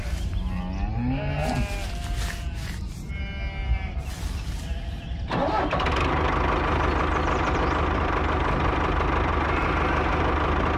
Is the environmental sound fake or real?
real